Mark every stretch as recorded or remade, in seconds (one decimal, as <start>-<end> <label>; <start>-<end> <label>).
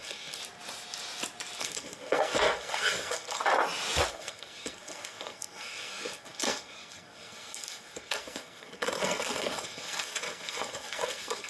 0.0-0.4 remade; 0.4-1.6 recorded; 1.6-3.4 remade; 3.4-4.1 recorded; 4.1-11.5 remade